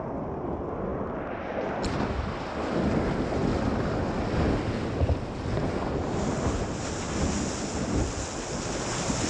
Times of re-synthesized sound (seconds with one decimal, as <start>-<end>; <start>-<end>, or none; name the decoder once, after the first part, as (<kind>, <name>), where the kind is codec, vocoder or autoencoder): none